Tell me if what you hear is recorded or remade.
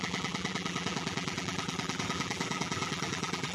remade